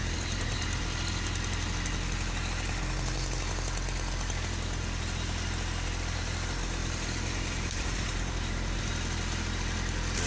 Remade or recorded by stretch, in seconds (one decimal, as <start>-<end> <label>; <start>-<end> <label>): 0.0-0.8 remade; 0.8-6.8 recorded; 6.8-8.9 remade; 8.9-10.3 recorded